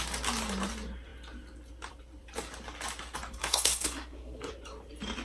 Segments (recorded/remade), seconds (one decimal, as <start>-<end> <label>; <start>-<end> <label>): 0.0-3.4 recorded; 3.4-4.5 remade; 4.5-5.2 recorded